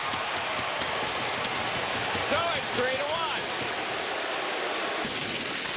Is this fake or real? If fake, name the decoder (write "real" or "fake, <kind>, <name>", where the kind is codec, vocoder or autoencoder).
real